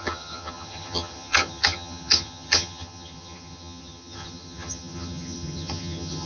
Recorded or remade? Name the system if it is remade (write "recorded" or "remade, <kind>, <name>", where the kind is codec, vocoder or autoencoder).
remade, vocoder, HiFi-GAN